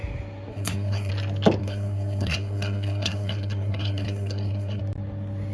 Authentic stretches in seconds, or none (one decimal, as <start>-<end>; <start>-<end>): 0.0-0.5; 1.1-1.6; 4.8-5.5